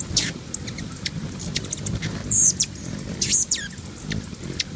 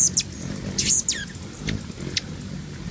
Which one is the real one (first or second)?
second